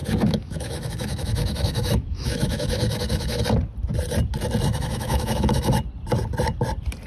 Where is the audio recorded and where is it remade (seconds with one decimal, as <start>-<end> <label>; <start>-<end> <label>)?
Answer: 0.0-3.4 remade; 3.4-4.7 recorded; 4.7-5.7 remade; 5.7-7.1 recorded